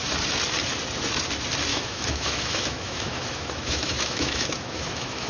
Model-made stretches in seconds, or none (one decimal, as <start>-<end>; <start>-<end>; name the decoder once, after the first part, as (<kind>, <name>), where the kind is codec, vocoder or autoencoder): 1.7-5.3 (autoencoder, DAC-VAE)